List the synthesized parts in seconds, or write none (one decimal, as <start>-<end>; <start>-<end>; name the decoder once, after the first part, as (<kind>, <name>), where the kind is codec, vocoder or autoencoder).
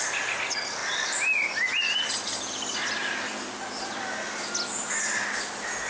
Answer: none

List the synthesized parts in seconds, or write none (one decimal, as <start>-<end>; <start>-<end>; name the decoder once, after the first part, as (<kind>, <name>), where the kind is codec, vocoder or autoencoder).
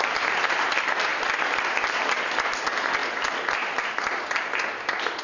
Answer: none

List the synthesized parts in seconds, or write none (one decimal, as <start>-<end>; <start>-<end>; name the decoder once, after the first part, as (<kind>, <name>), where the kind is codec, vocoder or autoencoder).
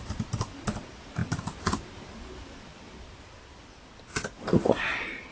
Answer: none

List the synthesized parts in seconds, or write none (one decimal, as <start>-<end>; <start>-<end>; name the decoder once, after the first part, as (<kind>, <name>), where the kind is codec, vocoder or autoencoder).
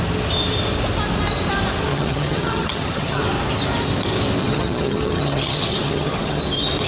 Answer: 1.9-3.2 (vocoder, HiFi-GAN); 4.4-6.4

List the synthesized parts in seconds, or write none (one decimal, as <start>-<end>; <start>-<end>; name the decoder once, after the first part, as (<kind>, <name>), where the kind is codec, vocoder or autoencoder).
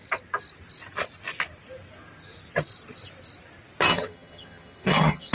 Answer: 3.9-5.3 (vocoder, HiFi-GAN)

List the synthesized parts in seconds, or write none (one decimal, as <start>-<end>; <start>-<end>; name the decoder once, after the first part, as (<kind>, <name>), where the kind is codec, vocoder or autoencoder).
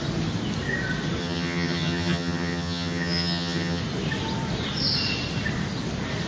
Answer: 1.2-3.8 (vocoder, HiFi-GAN)